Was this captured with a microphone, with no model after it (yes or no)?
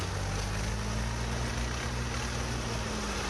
yes